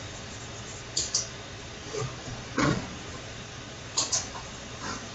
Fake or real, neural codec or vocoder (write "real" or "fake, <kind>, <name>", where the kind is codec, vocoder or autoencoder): fake, vocoder, Vocos